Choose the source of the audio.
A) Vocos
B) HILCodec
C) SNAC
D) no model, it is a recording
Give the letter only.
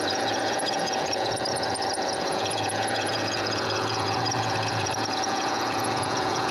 A